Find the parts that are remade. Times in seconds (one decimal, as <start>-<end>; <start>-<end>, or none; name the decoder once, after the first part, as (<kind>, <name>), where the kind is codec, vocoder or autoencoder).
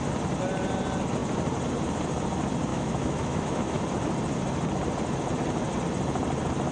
2.7-3.8 (autoencoder, DAC-VAE)